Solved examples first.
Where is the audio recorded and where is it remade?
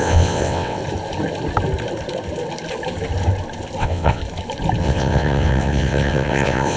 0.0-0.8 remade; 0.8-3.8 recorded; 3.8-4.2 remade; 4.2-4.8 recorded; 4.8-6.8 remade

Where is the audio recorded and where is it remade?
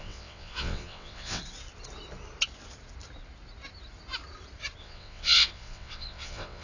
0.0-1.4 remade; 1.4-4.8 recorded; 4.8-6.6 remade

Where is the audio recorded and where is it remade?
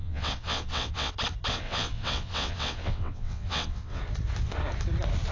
0.0-1.1 remade; 1.1-1.5 recorded; 1.5-4.0 remade; 4.0-5.3 recorded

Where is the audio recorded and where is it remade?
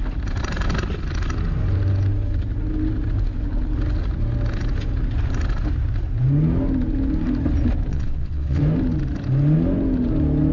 0.0-7.9 recorded; 7.9-8.6 remade; 8.6-10.5 recorded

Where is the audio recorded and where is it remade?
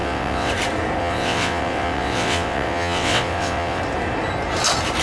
0.0-0.5 remade; 0.5-1.0 recorded; 1.0-3.8 remade; 3.8-5.0 recorded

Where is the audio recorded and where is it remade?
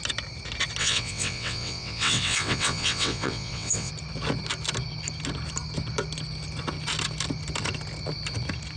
0.0-0.8 recorded; 0.8-3.9 remade; 3.9-8.8 recorded